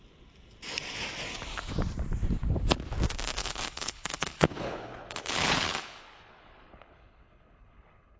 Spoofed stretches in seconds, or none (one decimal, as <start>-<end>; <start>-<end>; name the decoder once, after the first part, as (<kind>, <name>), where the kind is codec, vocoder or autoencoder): 3.4-8.2 (codec, HILCodec)